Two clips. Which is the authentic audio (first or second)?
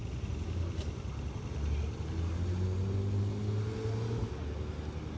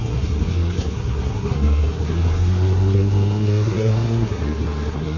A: first